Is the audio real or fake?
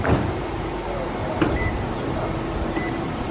real